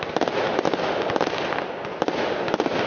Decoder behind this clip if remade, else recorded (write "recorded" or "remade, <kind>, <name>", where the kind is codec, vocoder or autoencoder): recorded